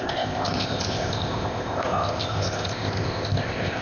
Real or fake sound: fake